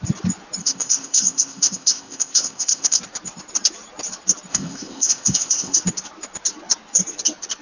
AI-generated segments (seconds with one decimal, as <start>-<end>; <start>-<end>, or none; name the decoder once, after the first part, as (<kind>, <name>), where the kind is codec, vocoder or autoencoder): 0.6-3.0 (codec, ZipCodec); 4.5-5.8